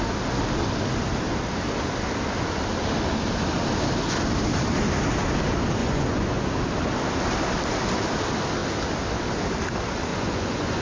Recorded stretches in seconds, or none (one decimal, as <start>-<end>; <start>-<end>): 0.0-5.8; 6.5-10.1

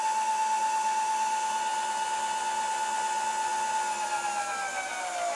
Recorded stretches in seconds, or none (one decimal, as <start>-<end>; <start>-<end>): 0.0-5.4

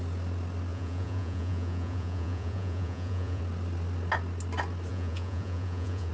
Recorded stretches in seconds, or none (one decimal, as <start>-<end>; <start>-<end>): 0.0-0.7; 3.4-4.9

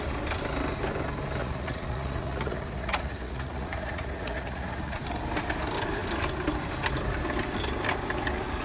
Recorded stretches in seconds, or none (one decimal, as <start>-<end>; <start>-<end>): 0.0-1.4; 5.0-8.6